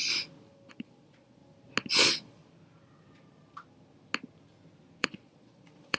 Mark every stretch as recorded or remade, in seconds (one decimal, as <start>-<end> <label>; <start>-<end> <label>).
0.0-0.7 recorded; 0.7-1.4 remade; 1.4-1.9 recorded; 1.9-2.4 remade; 2.4-5.0 recorded; 5.0-6.0 remade